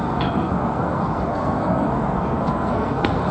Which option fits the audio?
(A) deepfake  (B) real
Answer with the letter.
A